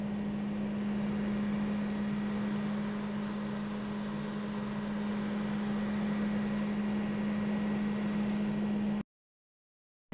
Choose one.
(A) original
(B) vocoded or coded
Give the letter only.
A